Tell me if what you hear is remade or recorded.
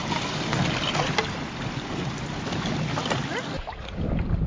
recorded